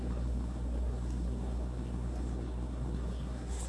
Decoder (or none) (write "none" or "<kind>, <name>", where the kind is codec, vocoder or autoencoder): codec, SNAC